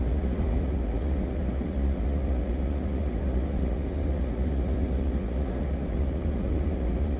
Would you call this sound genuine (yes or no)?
no